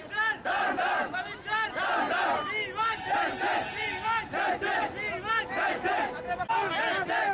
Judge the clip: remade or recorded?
recorded